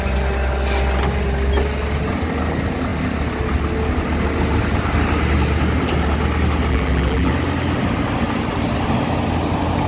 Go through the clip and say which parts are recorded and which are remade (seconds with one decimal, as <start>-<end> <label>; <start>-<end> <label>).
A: 0.0-6.7 recorded; 6.7-7.3 remade; 7.3-9.9 recorded